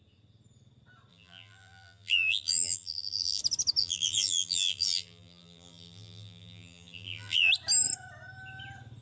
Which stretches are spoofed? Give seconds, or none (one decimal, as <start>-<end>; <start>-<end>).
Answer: 1.1-3.4; 3.8-7.5